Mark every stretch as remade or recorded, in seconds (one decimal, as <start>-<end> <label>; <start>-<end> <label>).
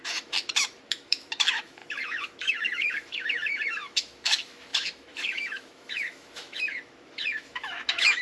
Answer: 0.0-8.2 remade